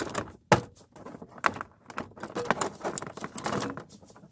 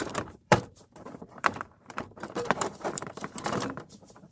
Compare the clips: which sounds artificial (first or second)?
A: second